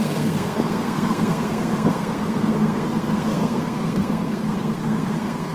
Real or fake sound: fake